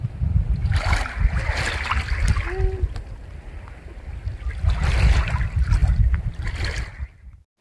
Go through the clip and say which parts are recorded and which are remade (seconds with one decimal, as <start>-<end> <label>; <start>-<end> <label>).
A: 0.0-7.6 recorded